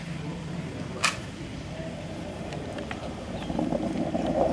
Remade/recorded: remade